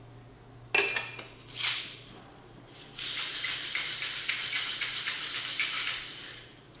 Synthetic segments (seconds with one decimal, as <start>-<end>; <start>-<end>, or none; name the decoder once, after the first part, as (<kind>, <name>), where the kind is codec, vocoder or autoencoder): 3.3-3.9 (vocoder, BigVGAN v2)